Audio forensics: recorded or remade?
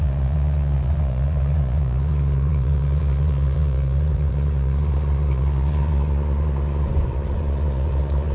remade